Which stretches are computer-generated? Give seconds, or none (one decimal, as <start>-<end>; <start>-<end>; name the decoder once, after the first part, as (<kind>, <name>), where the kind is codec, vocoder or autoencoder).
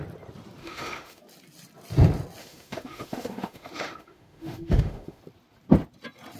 0.6-1.2 (autoencoder, DAC-VAE); 2.4-5.2